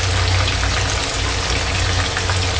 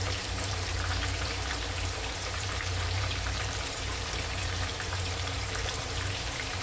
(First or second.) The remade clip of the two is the second